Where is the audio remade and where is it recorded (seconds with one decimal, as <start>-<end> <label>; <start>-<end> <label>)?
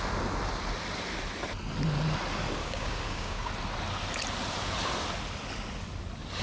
0.0-2.6 recorded; 2.6-3.5 remade; 3.5-6.4 recorded